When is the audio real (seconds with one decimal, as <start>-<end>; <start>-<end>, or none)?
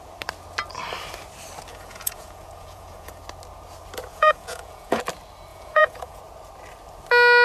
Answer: 0.0-1.7; 3.2-4.1; 5.0-5.5; 6.2-7.4